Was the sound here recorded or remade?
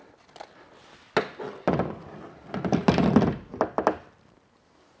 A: recorded